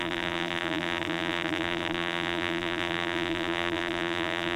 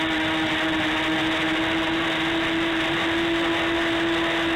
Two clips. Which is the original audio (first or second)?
second